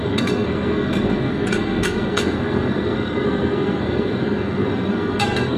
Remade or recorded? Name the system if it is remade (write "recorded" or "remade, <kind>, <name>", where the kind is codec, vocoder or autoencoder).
remade, codec, SNAC